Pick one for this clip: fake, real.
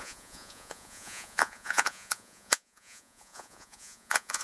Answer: fake